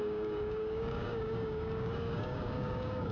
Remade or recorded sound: remade